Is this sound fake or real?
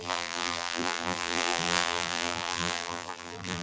fake